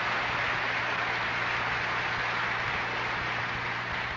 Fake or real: real